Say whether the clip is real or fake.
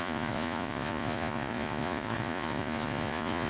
fake